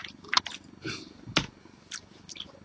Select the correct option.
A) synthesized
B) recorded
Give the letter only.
B